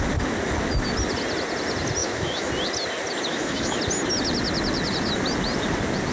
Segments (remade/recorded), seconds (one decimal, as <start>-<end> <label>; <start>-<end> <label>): 0.0-2.0 recorded; 2.0-2.5 remade; 2.5-3.3 recorded; 3.3-3.8 remade; 3.8-6.1 recorded